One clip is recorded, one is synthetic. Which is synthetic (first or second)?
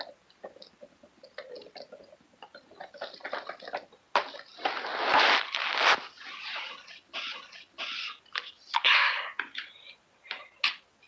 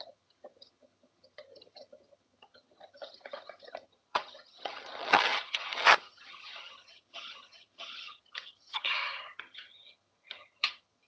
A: second